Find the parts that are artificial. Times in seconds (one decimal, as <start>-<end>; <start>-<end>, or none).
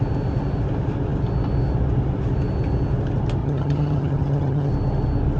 3.4-4.7